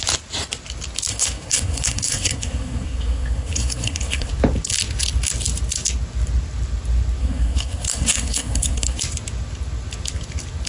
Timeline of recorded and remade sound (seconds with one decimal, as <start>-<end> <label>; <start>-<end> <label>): 0.0-1.1 recorded; 1.1-4.3 remade; 4.3-7.2 recorded; 7.2-9.0 remade; 9.0-10.7 recorded